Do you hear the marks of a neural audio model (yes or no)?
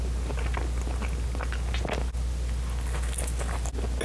no